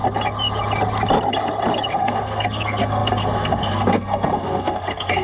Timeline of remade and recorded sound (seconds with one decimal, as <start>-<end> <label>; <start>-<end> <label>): 0.0-1.9 recorded; 1.9-5.2 remade